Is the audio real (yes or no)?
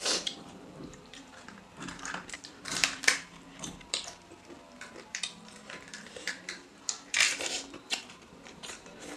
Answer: no